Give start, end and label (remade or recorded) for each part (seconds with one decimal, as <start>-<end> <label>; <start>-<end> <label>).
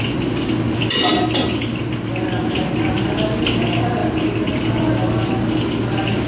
0.0-6.3 recorded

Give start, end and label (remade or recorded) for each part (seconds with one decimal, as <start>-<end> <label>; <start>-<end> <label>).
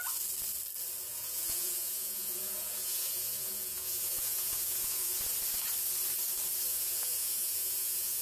0.0-1.1 recorded; 1.1-5.2 remade; 5.2-6.7 recorded; 6.7-8.2 remade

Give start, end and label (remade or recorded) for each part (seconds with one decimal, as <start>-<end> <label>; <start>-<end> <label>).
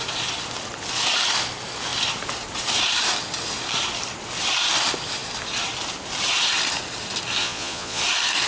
0.0-7.4 recorded; 7.4-8.0 remade; 8.0-8.5 recorded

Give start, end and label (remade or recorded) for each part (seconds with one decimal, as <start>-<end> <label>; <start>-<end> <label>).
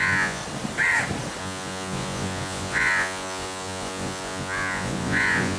0.0-0.4 remade; 0.4-1.4 recorded; 1.4-5.6 remade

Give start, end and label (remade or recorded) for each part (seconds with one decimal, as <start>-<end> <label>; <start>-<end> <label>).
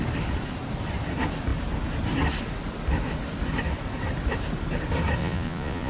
0.0-5.2 recorded; 5.2-5.9 remade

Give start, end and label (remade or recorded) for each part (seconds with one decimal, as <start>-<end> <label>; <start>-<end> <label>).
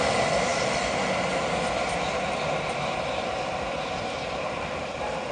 0.0-5.3 recorded